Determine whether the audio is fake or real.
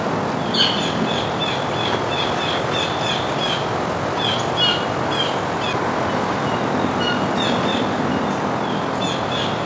real